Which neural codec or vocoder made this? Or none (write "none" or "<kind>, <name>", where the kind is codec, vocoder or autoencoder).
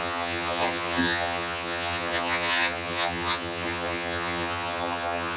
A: vocoder, HiFi-GAN